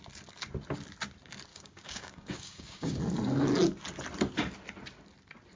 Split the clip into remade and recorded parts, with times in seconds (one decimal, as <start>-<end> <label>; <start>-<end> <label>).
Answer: 0.0-1.5 recorded; 1.5-3.0 remade; 3.0-5.6 recorded